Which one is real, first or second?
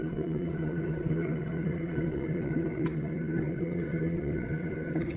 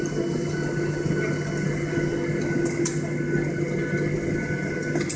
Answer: second